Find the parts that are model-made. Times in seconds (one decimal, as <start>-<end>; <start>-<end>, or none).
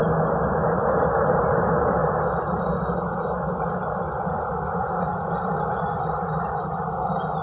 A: none